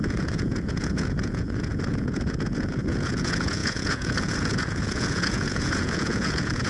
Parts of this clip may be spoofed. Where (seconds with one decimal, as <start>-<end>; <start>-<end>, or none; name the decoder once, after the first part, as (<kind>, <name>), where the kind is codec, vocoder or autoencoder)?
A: 0.0-6.7 (vocoder, Vocos)